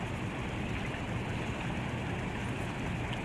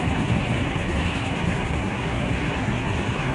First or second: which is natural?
first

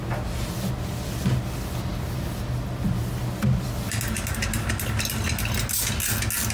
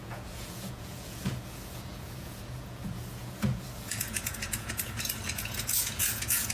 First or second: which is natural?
first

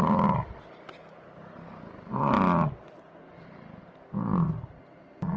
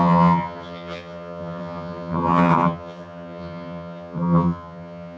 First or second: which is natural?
first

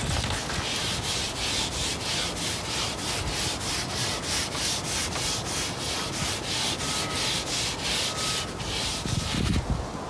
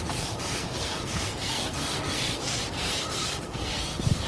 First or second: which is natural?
first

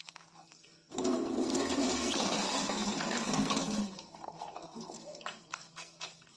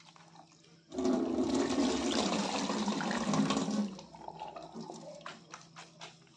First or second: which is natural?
second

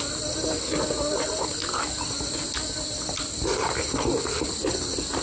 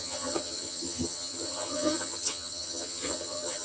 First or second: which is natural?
first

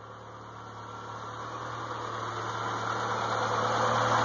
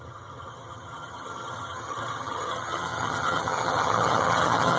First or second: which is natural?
first